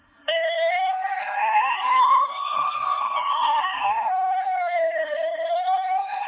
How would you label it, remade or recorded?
remade